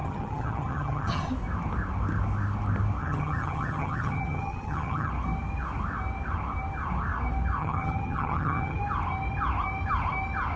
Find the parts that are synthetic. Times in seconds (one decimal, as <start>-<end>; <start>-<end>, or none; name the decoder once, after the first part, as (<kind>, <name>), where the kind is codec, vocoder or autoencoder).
0.0-1.3 (vocoder, HiFi-GAN); 3.0-5.1; 7.6-8.8